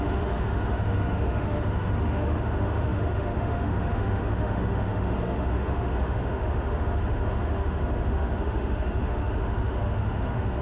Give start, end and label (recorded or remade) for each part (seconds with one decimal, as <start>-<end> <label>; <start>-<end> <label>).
0.0-10.6 remade

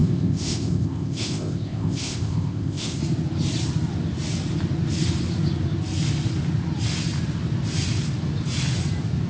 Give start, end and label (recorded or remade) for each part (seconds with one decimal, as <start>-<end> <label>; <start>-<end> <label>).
0.0-3.0 remade; 3.0-9.3 recorded

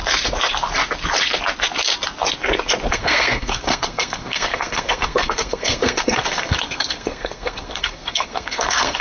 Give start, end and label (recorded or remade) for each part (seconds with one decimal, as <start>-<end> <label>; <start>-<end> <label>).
0.0-2.9 recorded; 2.9-9.0 remade

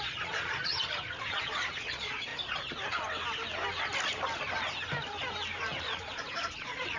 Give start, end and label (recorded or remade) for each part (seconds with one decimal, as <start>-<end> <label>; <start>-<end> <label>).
0.0-0.7 remade; 0.7-1.2 recorded; 1.2-2.3 remade; 2.3-5.8 recorded; 5.8-7.0 remade

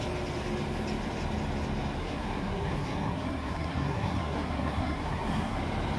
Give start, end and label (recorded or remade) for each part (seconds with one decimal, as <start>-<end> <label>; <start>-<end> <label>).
0.0-2.0 recorded; 2.0-5.6 remade; 5.6-6.0 recorded

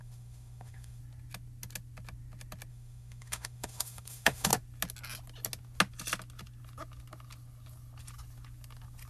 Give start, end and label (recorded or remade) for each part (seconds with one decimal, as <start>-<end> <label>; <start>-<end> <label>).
0.0-1.0 remade; 1.0-2.7 recorded; 2.7-4.5 remade; 4.5-9.1 recorded